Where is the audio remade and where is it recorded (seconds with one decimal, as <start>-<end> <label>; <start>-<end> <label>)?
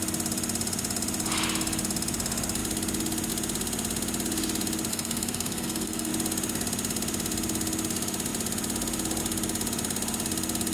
0.0-4.9 recorded; 4.9-6.1 remade; 6.1-10.7 recorded